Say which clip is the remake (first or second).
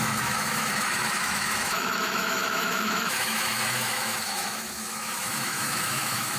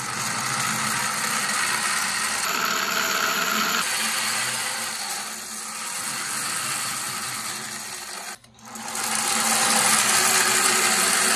first